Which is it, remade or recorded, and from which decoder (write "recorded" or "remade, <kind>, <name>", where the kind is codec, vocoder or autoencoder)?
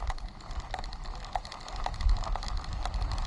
recorded